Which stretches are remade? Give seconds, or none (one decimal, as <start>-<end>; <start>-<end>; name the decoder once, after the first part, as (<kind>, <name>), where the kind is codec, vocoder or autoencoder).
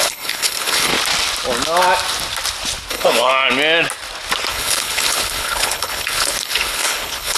0.0-0.9 (codec, HILCodec); 2.9-3.3; 4.5-7.4